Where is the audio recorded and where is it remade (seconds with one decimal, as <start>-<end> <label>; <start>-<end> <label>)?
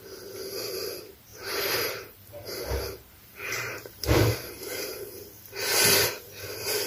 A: 0.0-1.3 recorded; 1.3-5.4 remade; 5.4-6.9 recorded